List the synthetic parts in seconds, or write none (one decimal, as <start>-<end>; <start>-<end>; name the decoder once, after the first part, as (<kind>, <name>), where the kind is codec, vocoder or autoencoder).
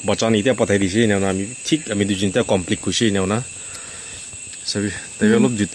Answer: 1.8-3.9 (vocoder, Vocos)